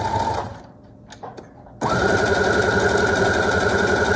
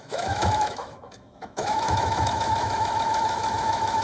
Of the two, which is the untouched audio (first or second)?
first